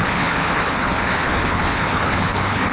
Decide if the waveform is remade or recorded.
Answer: remade